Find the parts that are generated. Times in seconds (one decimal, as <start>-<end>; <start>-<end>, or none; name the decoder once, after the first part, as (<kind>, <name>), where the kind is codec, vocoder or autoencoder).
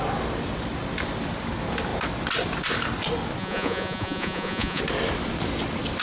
3.4-4.8 (vocoder, Vocos)